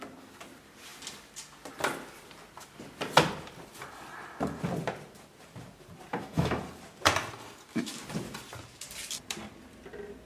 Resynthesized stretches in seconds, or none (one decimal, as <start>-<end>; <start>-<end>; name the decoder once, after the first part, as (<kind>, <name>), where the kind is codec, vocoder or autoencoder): 6.1-6.6 (autoencoder, DAC-VAE)